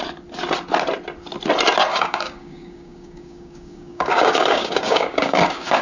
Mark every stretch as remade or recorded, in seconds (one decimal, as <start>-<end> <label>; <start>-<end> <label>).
0.0-1.9 recorded; 1.9-5.8 remade